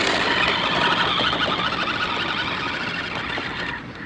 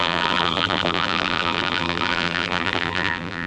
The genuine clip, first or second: first